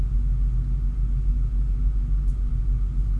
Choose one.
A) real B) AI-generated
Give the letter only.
A